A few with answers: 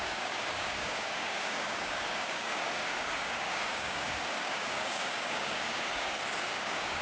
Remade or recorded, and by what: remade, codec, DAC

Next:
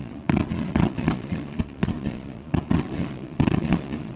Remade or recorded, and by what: remade, vocoder, Vocos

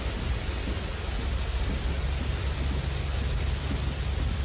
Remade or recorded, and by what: recorded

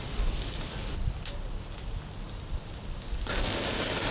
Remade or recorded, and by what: recorded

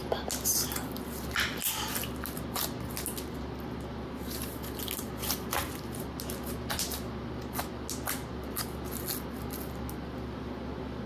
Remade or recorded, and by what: recorded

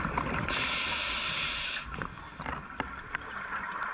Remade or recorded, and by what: recorded